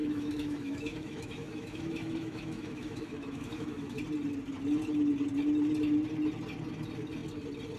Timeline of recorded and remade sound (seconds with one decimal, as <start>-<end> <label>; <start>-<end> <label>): 0.0-4.0 remade; 4.0-7.8 recorded